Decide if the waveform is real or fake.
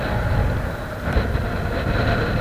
real